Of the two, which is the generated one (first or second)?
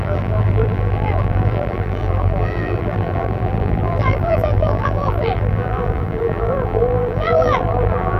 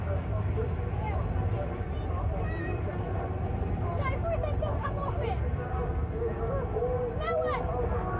first